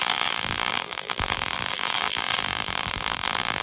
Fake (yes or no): yes